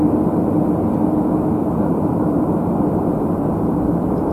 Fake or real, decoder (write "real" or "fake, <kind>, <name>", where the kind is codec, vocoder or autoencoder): real